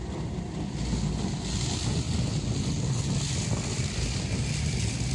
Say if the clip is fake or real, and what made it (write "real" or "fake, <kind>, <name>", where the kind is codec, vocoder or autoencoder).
real